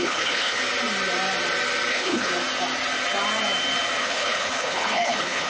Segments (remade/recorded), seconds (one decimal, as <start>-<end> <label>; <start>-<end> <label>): 0.0-0.6 remade; 0.6-1.9 recorded; 1.9-2.3 remade; 2.3-4.0 recorded; 4.0-5.5 remade